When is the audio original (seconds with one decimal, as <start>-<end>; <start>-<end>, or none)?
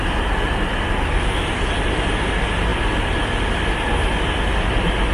0.0-5.1